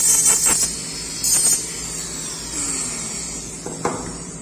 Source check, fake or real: real